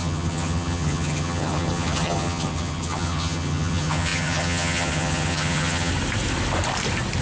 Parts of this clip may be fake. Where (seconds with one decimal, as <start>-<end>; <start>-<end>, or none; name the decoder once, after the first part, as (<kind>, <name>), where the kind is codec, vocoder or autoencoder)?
0.0-5.9 (vocoder, HiFi-GAN)